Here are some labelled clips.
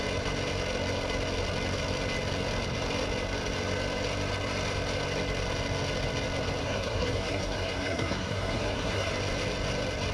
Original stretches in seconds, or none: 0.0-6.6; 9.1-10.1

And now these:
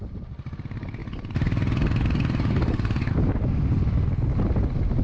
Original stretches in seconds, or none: 0.0-5.0

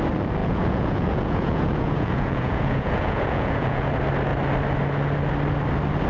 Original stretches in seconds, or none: 0.0-0.4; 3.9-6.1

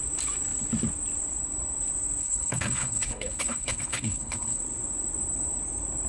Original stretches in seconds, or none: 0.0-2.2; 4.6-6.1

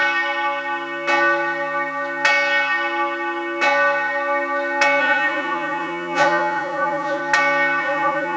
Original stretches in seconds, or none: 0.0-5.0; 7.2-7.8

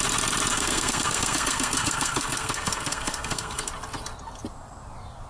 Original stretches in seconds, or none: 0.0-0.5; 3.7-5.3

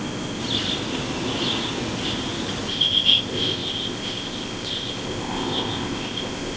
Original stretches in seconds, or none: 0.4-2.7